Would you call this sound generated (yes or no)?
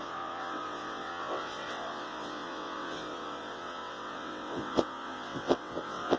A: yes